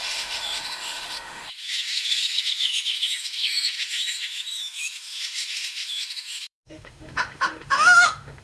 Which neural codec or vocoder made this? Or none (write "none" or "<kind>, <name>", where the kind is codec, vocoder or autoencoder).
autoencoder, DAC-VAE